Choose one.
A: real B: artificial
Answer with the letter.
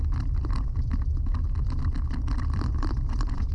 A